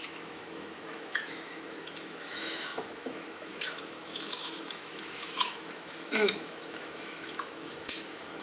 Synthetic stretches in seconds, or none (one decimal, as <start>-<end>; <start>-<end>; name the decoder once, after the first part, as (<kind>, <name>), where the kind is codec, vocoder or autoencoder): 0.0-8.4 (autoencoder, DAC-VAE)